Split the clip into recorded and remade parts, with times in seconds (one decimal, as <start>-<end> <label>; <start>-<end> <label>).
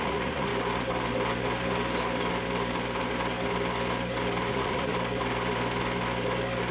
0.0-0.5 remade; 0.5-4.5 recorded; 4.5-4.9 remade; 4.9-6.7 recorded